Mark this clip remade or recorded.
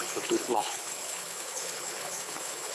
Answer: remade